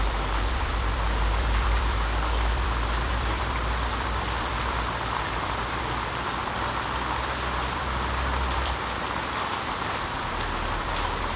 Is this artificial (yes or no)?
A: yes